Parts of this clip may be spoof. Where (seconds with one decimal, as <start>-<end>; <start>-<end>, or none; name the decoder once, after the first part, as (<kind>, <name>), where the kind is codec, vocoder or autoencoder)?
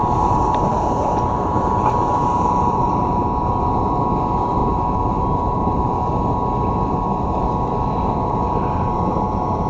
0.7-3.2 (vocoder, BigVGAN v2); 4.6-6.1